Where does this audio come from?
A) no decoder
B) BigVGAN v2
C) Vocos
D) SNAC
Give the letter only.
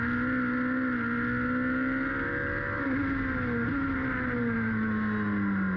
A